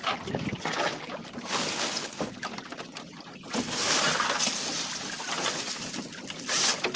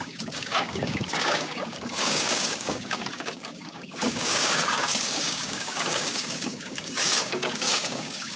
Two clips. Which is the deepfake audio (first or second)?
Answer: second